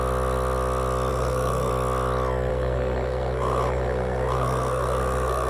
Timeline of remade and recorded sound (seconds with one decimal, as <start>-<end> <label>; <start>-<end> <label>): 0.0-1.1 recorded; 1.1-1.7 remade; 1.7-2.5 recorded; 2.5-5.5 remade